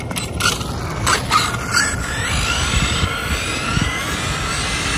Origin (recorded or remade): recorded